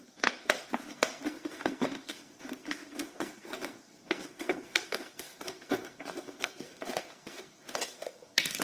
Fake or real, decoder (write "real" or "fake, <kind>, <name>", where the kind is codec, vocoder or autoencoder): fake, codec, SNAC